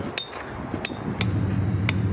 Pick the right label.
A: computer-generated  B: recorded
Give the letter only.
B